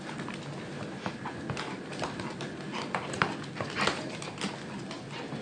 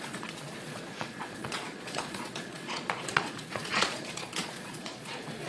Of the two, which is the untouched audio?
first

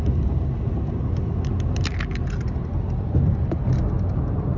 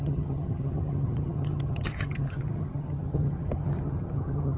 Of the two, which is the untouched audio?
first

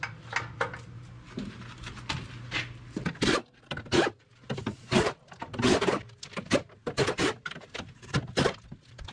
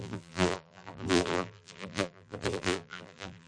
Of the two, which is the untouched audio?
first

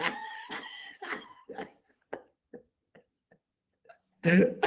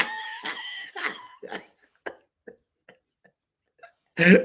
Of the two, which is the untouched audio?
second